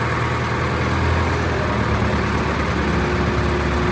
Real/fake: real